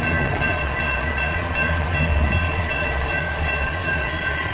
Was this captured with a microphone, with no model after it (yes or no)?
no